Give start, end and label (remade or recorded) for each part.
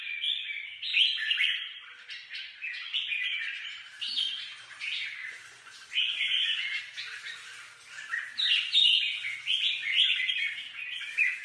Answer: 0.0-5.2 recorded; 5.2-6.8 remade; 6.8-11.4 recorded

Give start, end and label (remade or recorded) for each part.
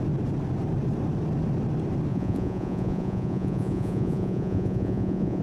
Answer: 0.0-2.1 recorded; 2.1-5.4 remade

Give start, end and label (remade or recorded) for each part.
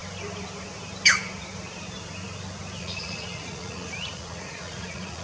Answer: 0.0-2.8 recorded; 2.8-5.2 remade